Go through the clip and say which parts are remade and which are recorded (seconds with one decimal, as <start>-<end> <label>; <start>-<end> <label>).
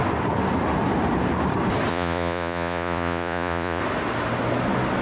0.0-1.9 recorded; 1.9-3.8 remade; 3.8-5.0 recorded